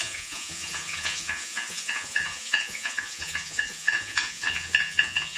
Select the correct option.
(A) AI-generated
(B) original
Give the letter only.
A